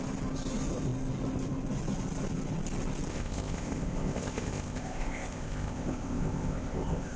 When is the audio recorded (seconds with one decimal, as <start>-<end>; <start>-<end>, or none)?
0.0-3.1